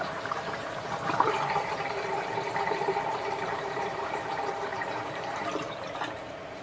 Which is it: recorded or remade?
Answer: remade